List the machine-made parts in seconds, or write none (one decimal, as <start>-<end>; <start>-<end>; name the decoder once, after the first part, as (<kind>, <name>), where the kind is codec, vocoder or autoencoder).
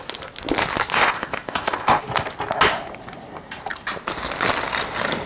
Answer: 0.9-2.0 (codec, ZipCodec)